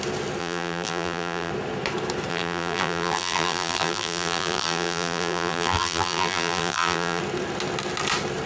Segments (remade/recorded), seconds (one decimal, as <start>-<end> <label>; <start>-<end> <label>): 0.0-0.4 recorded; 0.4-1.5 remade; 1.5-2.3 recorded; 2.3-7.2 remade; 7.2-8.5 recorded